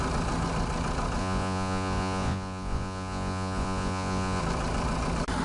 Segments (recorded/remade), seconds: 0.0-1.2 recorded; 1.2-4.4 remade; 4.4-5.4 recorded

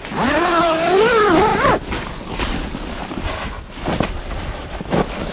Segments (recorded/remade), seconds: 0.0-5.3 recorded

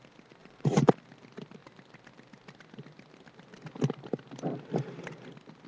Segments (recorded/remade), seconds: 0.0-0.4 recorded; 0.4-0.9 remade; 0.9-5.7 recorded